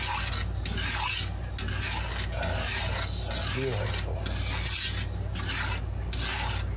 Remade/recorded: recorded